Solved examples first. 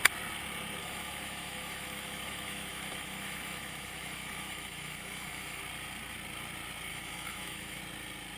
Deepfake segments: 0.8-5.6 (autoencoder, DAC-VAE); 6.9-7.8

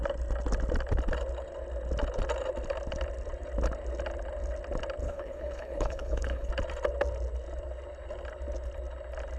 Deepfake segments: 5.0-6.5 (codec, HILCodec)

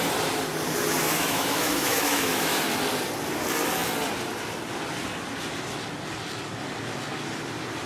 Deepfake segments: 1.0-2.6 (autoencoder, DAC-VAE)

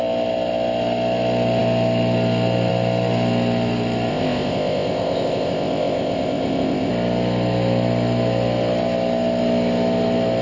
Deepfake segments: 4.1-6.9 (codec, ZipCodec)